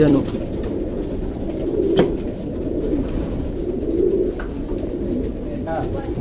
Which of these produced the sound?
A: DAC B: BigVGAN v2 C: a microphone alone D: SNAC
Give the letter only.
B